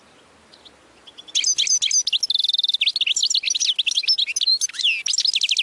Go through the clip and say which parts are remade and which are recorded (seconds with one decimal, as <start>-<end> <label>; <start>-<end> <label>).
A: 0.0-5.6 recorded